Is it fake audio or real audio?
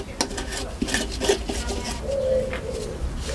real